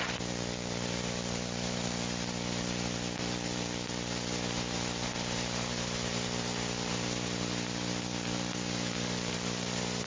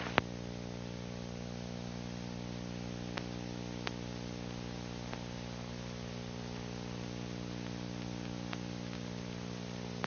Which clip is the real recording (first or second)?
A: second